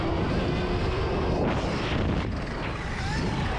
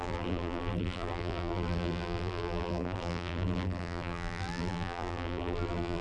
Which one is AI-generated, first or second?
second